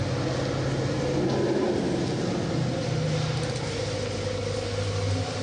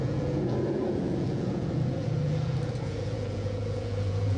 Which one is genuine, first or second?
first